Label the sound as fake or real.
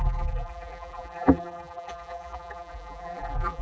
fake